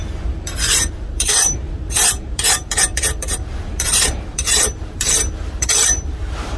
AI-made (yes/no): yes